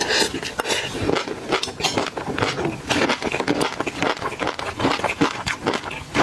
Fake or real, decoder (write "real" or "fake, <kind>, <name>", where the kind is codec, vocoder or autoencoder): real